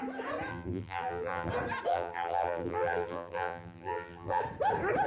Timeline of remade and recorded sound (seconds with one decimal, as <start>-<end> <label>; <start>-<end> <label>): 0.0-0.5 recorded; 0.5-1.5 remade; 1.5-1.9 recorded; 1.9-4.4 remade; 4.4-5.1 recorded